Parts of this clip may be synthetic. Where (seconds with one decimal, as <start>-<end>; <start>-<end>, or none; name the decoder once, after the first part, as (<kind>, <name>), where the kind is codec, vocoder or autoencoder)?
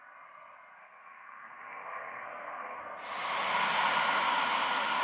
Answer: 0.8-2.8 (codec, SNAC)